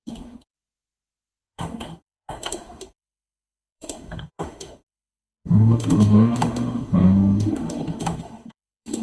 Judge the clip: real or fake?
fake